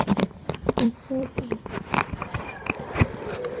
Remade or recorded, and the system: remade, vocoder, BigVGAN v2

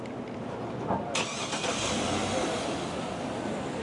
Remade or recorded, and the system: recorded